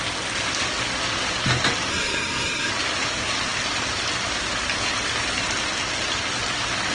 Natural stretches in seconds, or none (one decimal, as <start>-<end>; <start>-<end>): 0.0-1.9; 2.7-6.9

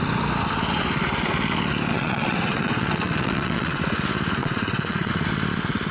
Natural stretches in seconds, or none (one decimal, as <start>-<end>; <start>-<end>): 0.0-1.9; 3.8-4.4; 5.1-5.9

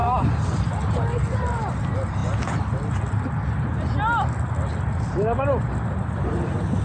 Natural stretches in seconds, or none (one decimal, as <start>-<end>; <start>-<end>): 0.7-1.2; 1.8-6.8

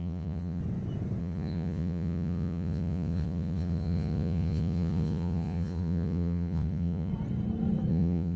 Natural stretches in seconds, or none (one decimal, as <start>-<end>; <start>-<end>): 0.6-1.2; 7.1-7.9